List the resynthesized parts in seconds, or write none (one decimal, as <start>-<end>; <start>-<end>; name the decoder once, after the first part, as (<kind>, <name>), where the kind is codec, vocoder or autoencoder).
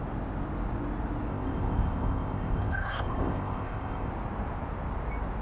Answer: 1.3-4.1 (codec, ZipCodec)